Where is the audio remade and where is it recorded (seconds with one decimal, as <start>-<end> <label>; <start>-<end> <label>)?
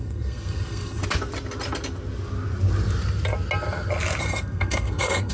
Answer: 0.0-1.0 remade; 1.0-4.2 recorded; 4.2-5.3 remade